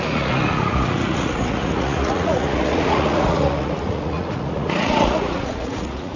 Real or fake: fake